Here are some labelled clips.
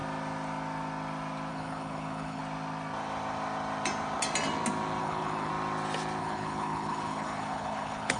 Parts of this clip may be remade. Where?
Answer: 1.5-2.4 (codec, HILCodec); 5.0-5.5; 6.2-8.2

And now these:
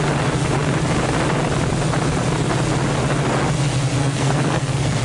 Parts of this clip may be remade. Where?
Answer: 4.0-5.0 (codec, SNAC)